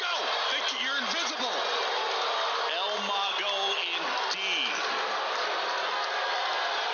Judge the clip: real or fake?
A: real